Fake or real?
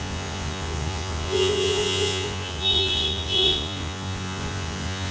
fake